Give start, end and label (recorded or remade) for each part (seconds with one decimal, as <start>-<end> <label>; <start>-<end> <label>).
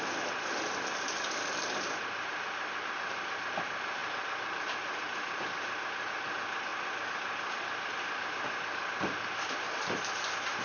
0.0-10.6 recorded